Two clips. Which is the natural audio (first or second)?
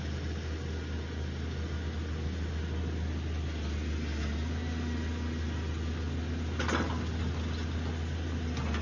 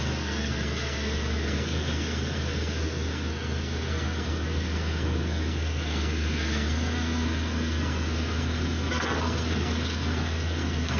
first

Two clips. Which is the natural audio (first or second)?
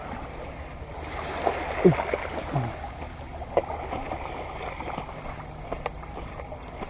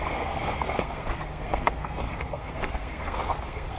first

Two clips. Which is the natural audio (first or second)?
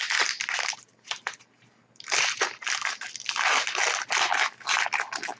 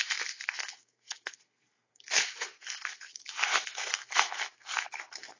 first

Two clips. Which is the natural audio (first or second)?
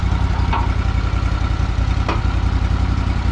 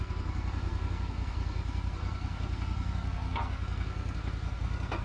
first